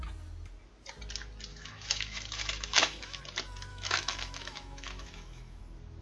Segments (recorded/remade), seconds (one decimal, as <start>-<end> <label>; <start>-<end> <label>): 0.0-1.5 recorded; 1.5-3.2 remade; 3.2-3.7 recorded; 3.7-5.6 remade; 5.6-6.0 recorded